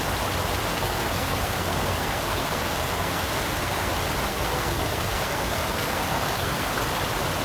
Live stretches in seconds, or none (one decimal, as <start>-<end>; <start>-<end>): 0.0-0.7; 3.9-4.3; 6.7-7.4